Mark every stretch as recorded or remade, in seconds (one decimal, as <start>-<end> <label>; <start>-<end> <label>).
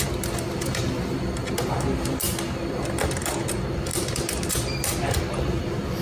0.0-6.0 recorded